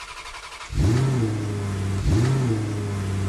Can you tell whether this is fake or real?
real